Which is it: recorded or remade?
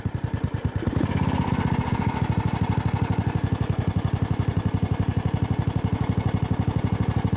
recorded